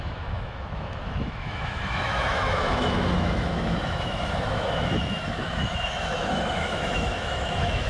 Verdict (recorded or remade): remade